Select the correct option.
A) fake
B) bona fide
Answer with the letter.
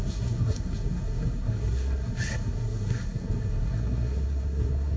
A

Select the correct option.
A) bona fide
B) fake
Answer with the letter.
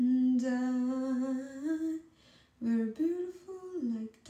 A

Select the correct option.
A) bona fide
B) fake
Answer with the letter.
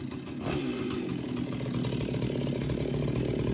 A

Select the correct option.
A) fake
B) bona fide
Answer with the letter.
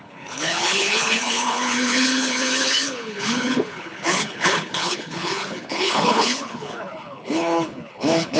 A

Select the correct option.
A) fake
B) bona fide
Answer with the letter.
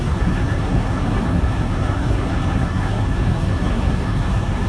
A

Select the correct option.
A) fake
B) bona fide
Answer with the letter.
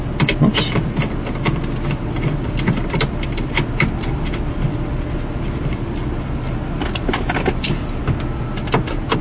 B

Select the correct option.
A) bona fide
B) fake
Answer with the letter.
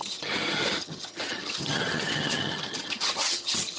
B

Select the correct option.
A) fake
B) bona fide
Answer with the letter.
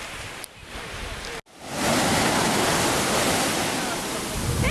B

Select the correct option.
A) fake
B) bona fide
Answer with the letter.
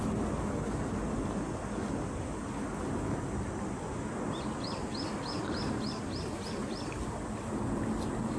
B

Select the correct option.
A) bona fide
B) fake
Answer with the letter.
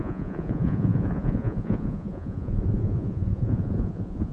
B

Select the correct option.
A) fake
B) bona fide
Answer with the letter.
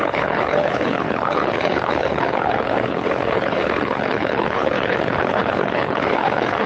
A